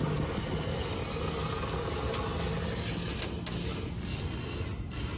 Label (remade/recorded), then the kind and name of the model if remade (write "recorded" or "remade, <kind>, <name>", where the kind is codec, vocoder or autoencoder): recorded